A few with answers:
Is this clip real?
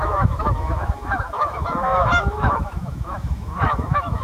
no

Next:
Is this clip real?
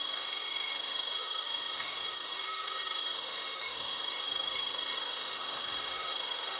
no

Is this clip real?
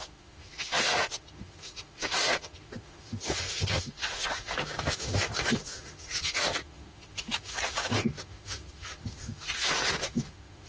no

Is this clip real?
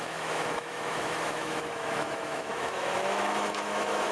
no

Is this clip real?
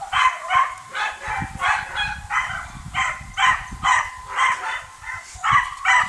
yes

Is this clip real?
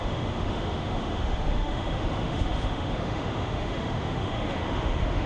no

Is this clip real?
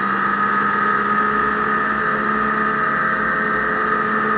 yes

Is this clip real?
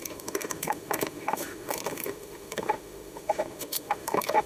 no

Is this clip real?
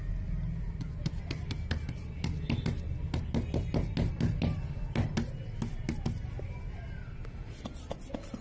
yes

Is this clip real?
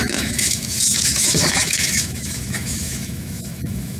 no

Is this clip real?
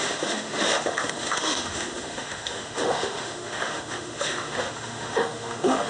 no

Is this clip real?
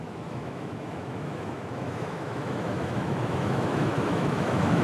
no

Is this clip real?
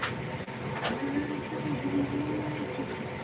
yes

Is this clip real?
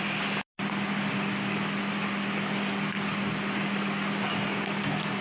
yes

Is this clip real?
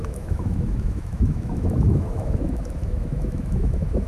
no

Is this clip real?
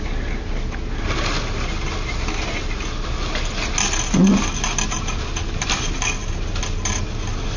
yes